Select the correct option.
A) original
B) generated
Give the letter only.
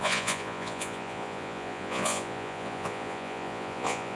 B